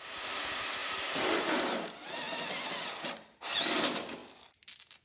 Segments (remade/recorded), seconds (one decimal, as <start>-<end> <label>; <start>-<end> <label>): 0.0-5.0 recorded